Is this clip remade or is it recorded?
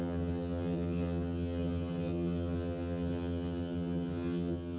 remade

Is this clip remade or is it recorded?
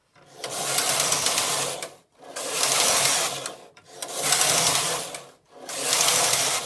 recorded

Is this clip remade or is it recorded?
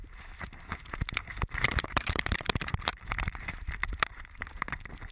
remade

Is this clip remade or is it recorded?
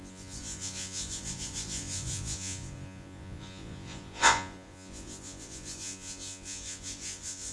remade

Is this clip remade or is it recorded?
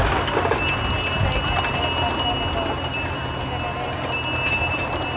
recorded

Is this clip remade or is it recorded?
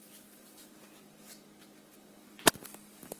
recorded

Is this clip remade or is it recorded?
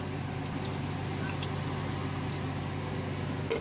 recorded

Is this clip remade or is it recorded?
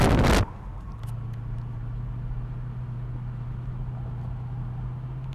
recorded